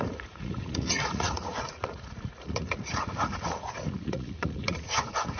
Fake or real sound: fake